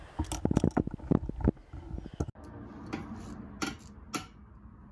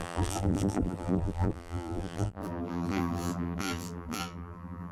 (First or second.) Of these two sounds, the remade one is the second